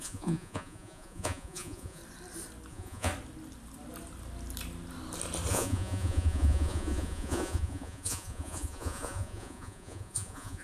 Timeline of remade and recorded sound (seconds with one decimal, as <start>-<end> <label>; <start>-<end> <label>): 0.0-2.0 remade; 2.0-2.7 recorded; 2.7-3.1 remade; 3.1-5.5 recorded; 5.5-10.6 remade